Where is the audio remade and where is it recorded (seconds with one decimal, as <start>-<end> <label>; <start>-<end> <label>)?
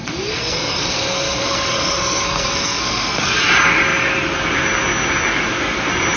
0.0-3.4 remade; 3.4-6.2 recorded